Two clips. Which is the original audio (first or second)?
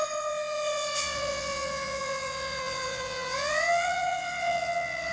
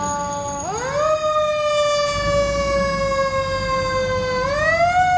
second